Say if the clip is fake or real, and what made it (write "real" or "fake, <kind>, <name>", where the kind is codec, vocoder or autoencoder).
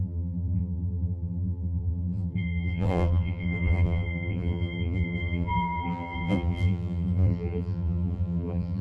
fake, vocoder, BigVGAN v2